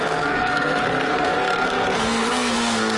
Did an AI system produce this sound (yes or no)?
yes